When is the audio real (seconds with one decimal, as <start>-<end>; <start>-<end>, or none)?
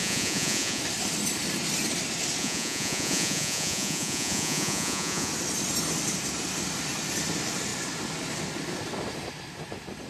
0.8-2.4; 5.3-10.1